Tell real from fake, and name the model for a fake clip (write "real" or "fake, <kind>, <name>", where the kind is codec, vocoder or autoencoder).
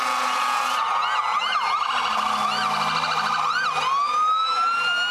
real